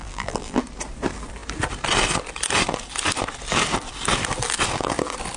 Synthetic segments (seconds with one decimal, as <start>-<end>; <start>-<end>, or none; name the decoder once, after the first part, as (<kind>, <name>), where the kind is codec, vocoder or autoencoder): 0.0-0.6 (vocoder, BigVGAN v2)